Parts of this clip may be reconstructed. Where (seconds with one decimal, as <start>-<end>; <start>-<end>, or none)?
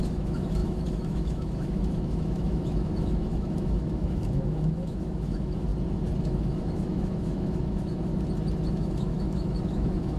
0.0-5.7; 6.2-8.1; 8.7-10.2